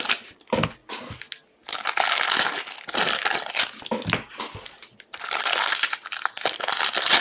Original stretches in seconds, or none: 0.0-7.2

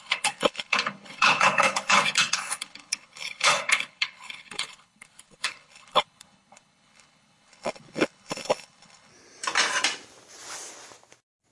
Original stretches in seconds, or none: 9.1-11.5

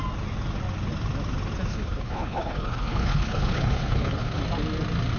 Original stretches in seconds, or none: 0.0-1.7; 4.4-5.2

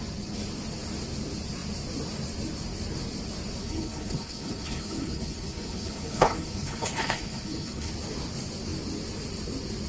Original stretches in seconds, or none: 0.0-3.6; 7.9-9.9

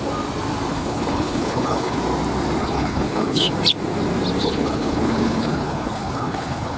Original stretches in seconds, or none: 0.0-0.7; 2.0-2.6; 3.5-4.4